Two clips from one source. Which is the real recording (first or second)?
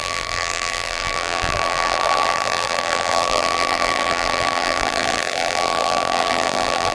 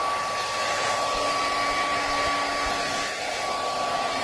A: second